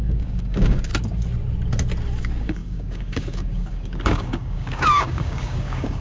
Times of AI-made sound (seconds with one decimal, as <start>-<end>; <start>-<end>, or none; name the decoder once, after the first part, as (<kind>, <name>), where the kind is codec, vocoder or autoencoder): 0.0-0.9 (codec, DAC); 2.2-6.0